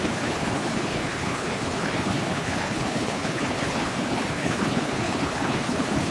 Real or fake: fake